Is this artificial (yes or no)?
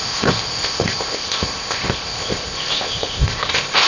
yes